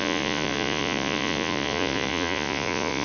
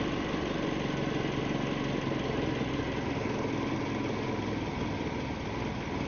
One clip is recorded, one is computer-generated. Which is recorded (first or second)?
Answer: second